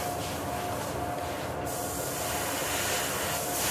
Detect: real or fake real